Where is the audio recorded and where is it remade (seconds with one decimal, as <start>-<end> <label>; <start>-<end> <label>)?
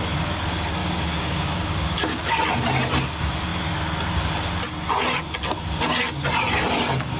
0.0-0.8 recorded; 0.8-2.3 remade; 2.3-7.2 recorded